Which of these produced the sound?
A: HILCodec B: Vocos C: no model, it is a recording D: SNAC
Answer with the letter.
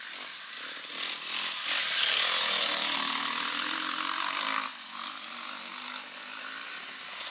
C